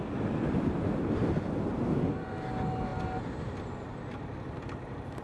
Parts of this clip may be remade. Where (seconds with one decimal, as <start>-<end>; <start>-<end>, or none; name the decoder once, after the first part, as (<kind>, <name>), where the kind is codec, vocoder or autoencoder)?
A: none